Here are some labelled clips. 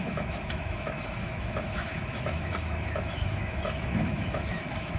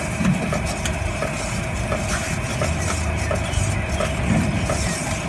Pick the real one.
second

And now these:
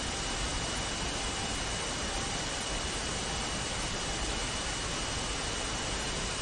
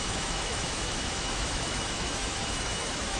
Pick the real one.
first